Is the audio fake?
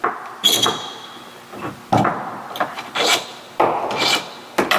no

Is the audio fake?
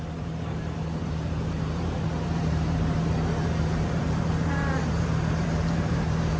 yes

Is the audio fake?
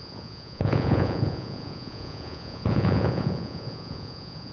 yes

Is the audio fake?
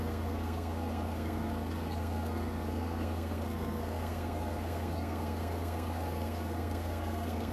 yes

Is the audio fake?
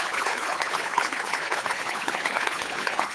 yes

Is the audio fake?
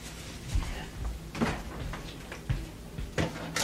no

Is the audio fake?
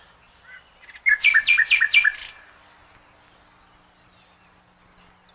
no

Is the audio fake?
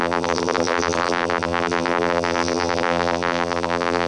yes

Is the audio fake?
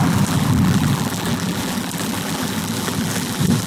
yes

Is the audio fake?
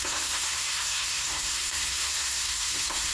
yes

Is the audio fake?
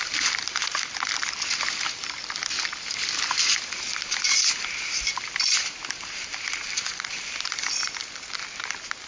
no